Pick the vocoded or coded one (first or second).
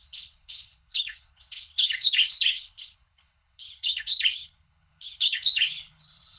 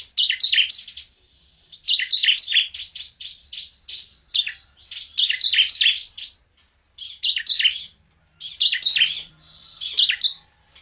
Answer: first